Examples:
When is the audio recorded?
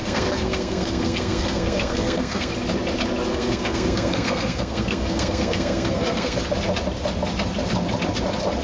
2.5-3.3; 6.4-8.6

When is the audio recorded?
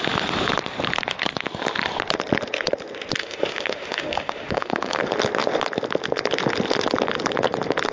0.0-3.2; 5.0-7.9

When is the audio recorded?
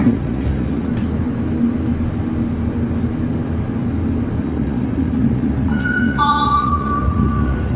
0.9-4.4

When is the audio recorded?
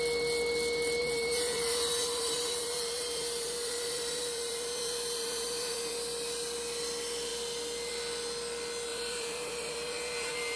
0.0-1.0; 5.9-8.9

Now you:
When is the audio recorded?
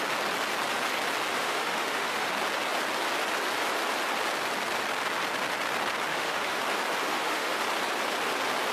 0.0-1.3; 2.3-6.1; 6.6-7.0; 7.6-8.7